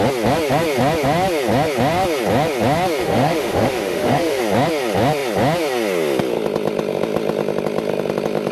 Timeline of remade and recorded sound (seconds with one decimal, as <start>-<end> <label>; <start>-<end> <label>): 0.0-3.0 recorded; 3.0-4.4 remade; 4.4-8.5 recorded